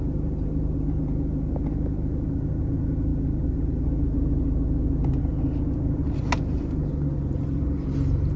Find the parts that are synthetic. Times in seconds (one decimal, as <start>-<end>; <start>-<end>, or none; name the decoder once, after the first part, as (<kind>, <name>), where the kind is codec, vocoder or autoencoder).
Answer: none